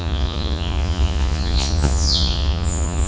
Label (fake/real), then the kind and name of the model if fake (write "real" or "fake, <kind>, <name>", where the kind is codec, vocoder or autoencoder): fake, vocoder, Vocos